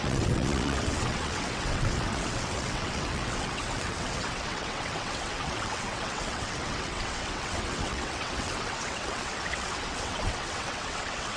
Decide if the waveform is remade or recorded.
remade